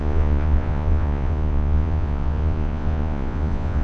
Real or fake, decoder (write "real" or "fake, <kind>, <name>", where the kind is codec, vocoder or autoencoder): fake, vocoder, Vocos